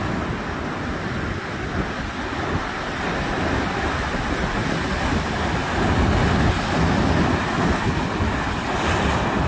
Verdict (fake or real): real